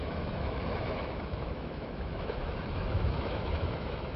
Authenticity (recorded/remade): remade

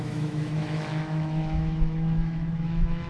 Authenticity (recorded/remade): remade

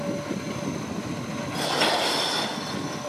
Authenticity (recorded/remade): recorded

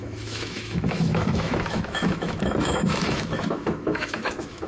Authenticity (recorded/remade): remade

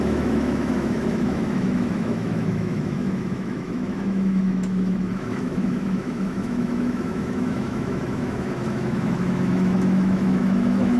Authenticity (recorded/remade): remade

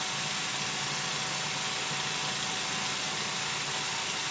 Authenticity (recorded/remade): recorded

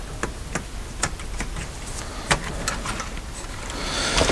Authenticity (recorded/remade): recorded